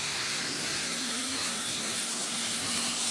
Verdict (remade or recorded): remade